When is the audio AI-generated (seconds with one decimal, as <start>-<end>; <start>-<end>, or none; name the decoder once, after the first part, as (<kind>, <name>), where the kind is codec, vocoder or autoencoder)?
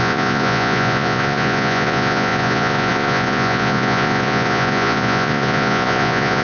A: 0.0-6.4 (vocoder, Vocos)